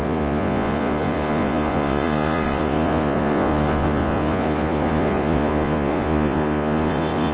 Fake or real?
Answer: fake